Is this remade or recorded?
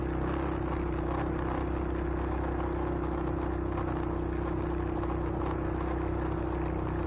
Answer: recorded